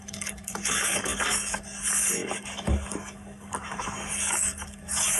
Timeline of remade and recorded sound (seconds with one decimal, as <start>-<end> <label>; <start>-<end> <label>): 0.0-5.2 remade